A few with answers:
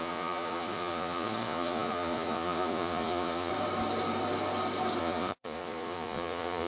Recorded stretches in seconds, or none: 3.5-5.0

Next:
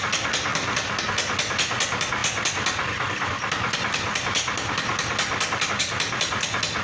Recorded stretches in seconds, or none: 0.0-6.8

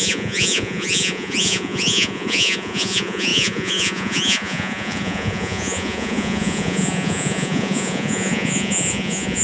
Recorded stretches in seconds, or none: none

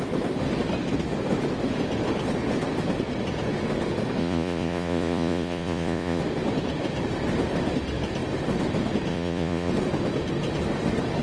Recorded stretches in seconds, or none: 0.0-4.2; 6.2-9.1; 9.7-11.2

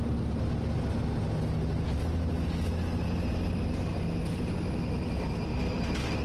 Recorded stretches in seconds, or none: 0.0-6.2

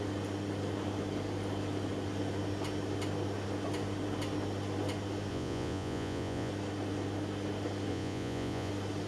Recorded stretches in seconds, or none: 0.0-5.3; 6.5-7.9; 8.7-9.1

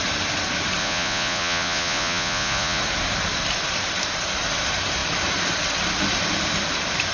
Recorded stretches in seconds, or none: 0.0-0.8; 2.8-7.1

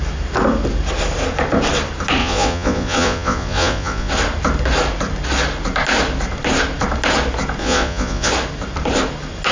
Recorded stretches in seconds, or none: 0.0-2.2; 4.1-7.6; 8.3-9.5